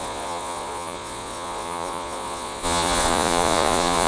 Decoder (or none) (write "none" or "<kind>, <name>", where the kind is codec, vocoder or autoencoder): vocoder, Vocos